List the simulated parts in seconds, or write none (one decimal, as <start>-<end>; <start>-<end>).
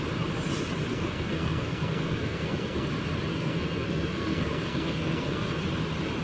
0.9-2.9; 3.3-5.6